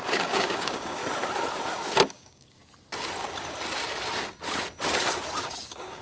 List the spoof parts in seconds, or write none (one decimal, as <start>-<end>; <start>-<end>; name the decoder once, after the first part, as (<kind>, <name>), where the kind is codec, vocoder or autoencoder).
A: 0.0-1.0 (codec, DAC); 2.1-2.6; 5.4-6.0